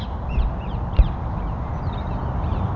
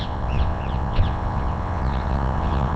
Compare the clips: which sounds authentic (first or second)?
first